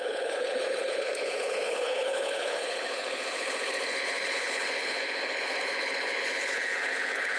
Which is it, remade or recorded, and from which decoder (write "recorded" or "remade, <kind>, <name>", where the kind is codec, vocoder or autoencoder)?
remade, codec, HILCodec